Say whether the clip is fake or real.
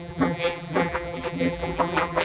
fake